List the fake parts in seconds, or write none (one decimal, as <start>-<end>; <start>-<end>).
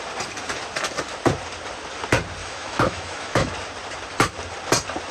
2.4-3.5